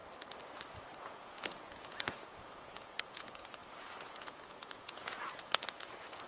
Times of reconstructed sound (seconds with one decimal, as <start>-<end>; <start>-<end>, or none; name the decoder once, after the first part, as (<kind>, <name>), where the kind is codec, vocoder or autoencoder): 1.0-6.3 (vocoder, Vocos)